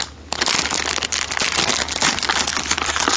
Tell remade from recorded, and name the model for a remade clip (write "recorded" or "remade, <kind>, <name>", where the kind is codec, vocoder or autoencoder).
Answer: recorded